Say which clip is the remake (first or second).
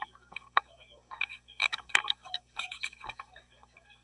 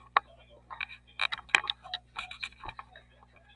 first